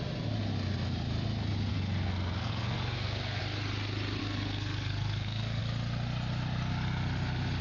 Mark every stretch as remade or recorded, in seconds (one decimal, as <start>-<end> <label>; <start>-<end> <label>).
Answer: 0.0-1.7 recorded; 1.7-3.4 remade; 3.4-4.2 recorded; 4.2-5.6 remade; 5.6-7.6 recorded